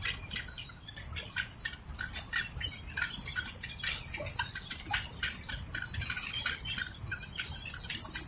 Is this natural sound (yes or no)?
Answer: yes